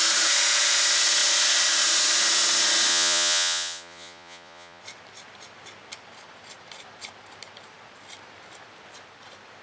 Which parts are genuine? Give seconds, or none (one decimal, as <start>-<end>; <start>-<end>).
0.0-2.9; 4.8-9.6